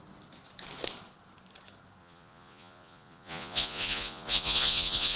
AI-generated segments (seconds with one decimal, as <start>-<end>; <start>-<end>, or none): 2.0-5.2